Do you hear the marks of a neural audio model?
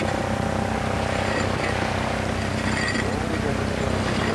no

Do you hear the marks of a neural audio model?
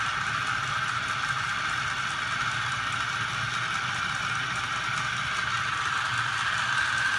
no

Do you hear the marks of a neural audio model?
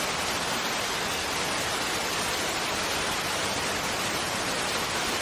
no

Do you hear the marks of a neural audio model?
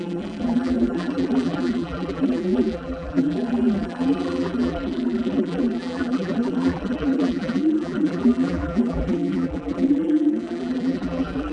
yes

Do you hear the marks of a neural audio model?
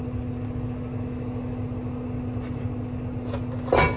no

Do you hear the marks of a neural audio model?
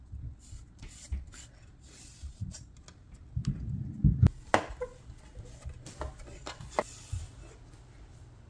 no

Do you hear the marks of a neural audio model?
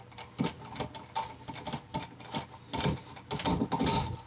no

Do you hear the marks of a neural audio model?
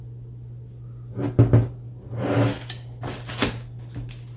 no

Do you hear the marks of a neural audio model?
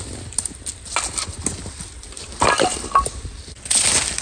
no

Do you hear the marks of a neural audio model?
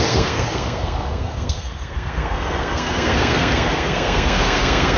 yes